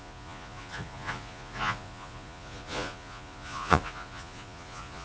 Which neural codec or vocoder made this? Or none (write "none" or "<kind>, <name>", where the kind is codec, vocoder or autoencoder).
vocoder, Vocos